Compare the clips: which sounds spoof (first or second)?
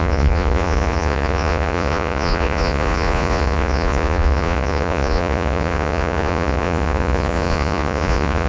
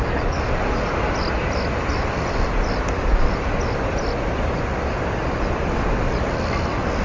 first